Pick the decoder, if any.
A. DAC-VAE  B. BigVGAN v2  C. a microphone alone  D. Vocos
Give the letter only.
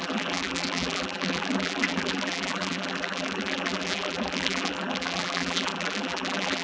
B